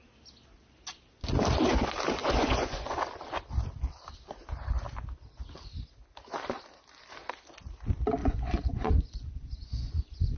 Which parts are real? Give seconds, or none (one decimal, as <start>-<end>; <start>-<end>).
0.0-2.2; 3.0-8.2